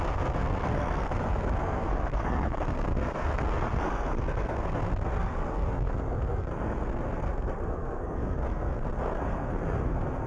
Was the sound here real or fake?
fake